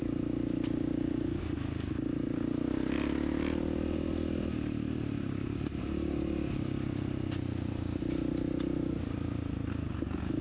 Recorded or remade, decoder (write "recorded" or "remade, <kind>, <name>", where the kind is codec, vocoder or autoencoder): recorded